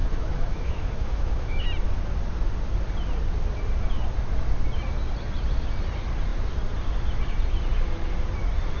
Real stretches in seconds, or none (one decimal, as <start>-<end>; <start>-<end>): 1.6-8.8